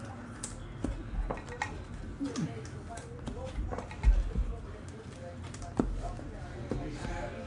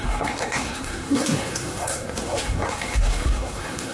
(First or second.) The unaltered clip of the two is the first